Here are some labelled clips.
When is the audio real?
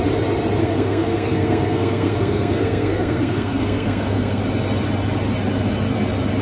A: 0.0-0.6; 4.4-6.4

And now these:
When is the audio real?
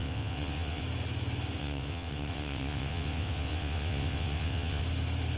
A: 0.8-1.6; 4.8-5.4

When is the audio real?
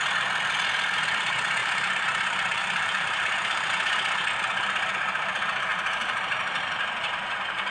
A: 0.0-1.6; 3.7-5.7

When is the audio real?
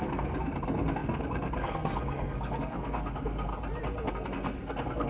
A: 3.5-4.1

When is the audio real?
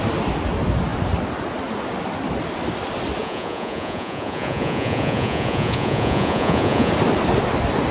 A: 0.0-3.2; 6.9-7.9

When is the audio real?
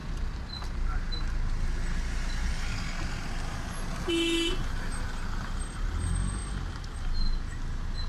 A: 0.0-8.1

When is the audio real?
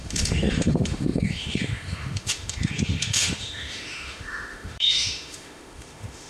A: none